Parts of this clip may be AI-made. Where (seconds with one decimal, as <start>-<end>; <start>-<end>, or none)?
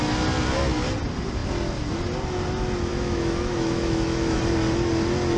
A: 2.9-4.4